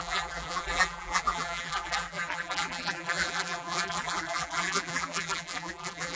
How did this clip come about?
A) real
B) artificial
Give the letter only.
B